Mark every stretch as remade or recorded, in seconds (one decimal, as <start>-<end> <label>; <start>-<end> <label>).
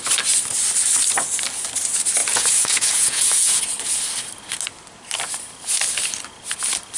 0.0-2.2 recorded; 2.2-3.6 remade; 3.6-7.0 recorded